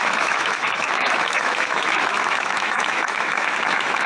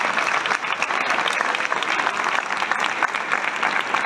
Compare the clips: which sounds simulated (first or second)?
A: first